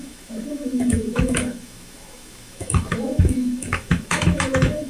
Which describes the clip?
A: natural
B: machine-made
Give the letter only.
B